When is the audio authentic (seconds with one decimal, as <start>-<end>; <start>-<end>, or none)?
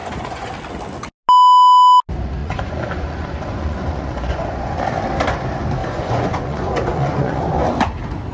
0.5-2.4; 4.8-5.8; 7.4-8.3